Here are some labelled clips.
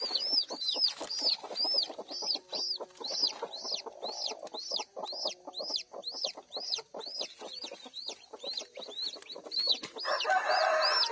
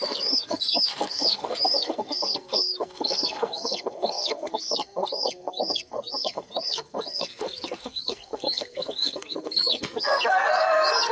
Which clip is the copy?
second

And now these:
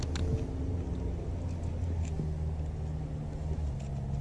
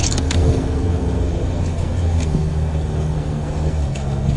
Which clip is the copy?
second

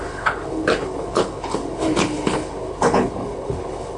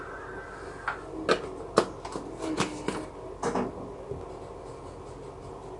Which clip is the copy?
first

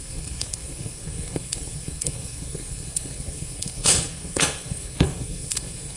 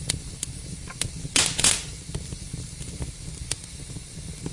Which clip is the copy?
first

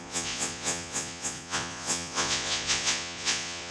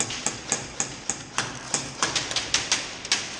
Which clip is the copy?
first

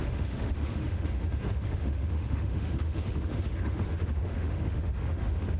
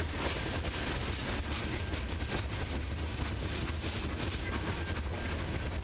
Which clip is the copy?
first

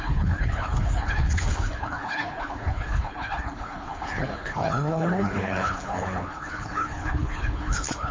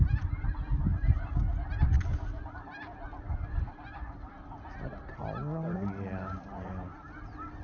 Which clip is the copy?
first